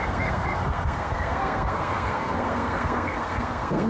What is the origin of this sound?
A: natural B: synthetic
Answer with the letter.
B